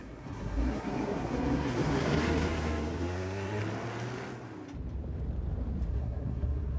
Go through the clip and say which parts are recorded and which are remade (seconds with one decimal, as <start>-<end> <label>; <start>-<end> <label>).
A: 0.0-3.6 remade; 3.6-5.9 recorded; 5.9-6.8 remade